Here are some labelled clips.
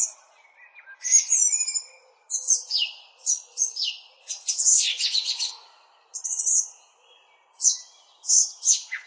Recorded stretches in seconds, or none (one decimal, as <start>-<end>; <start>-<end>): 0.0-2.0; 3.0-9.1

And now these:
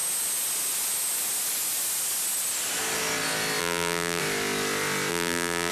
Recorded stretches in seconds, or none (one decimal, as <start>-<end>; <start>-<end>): 0.0-3.6; 4.2-5.1

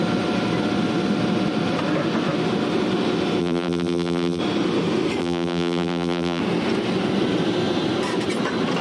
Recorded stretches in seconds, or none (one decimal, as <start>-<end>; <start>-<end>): 0.0-3.4; 4.4-5.2; 6.4-8.8